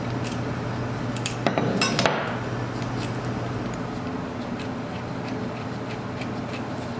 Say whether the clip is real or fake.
real